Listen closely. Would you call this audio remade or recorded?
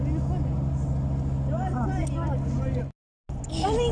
recorded